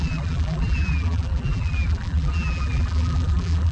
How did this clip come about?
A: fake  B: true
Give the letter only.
A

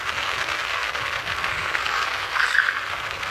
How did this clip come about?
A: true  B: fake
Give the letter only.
B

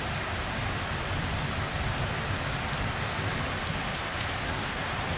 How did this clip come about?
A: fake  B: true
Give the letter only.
B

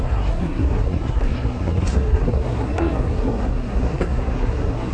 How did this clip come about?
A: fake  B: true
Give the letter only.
A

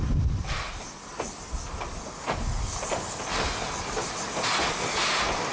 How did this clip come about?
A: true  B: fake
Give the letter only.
A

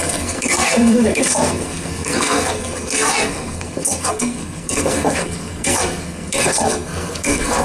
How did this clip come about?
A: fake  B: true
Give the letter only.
A